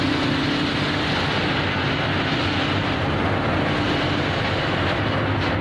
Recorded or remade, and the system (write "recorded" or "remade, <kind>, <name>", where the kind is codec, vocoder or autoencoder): recorded